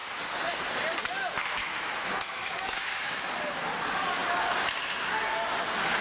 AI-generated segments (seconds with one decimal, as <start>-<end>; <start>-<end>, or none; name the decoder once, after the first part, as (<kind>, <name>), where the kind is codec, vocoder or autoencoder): 1.6-3.3 (autoencoder, DAC-VAE)